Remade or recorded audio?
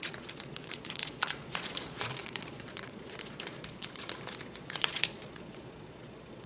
remade